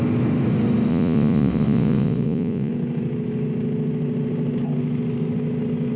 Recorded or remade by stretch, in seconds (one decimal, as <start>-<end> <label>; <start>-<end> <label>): 0.0-0.9 recorded; 0.9-2.7 remade; 2.7-6.0 recorded